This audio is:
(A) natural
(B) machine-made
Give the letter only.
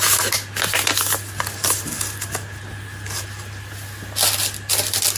A